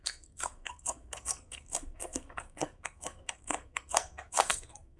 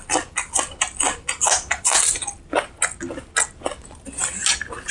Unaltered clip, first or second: second